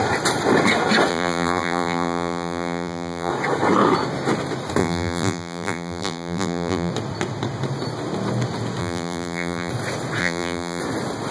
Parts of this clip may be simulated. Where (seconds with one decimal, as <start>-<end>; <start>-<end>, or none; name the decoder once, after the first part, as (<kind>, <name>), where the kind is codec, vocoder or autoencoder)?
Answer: 1.1-3.3 (vocoder, BigVGAN v2); 4.8-6.9; 8.8-9.7; 10.2-10.8